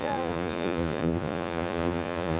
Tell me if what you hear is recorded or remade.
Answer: remade